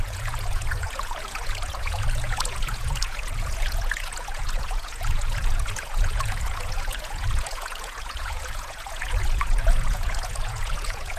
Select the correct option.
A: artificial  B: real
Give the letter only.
A